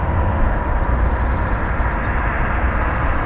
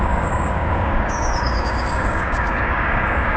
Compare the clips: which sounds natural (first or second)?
first